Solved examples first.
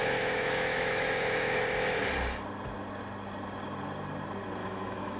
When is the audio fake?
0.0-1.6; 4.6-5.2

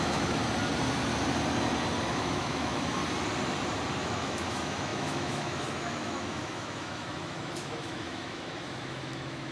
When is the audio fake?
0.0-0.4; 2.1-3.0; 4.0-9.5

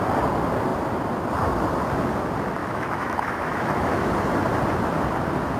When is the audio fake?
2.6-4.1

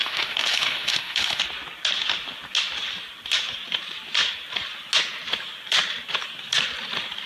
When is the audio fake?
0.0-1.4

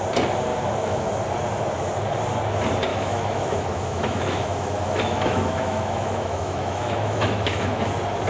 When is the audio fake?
0.5-1.1; 2.9-7.9

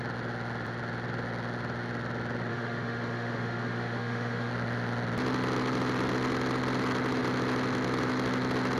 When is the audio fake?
2.5-4.5